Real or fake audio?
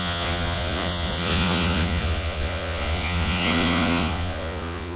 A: fake